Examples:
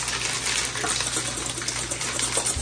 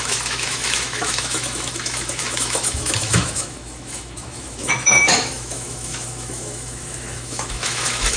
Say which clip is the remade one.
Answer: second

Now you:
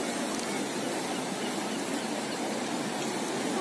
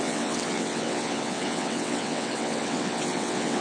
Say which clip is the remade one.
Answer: second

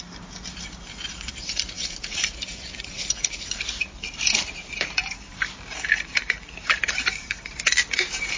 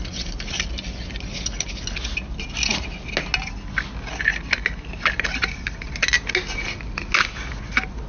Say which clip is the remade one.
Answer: first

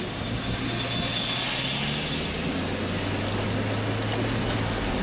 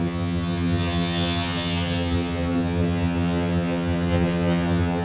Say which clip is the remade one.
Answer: second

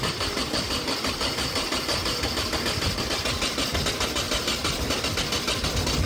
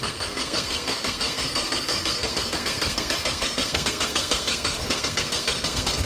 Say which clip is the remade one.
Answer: second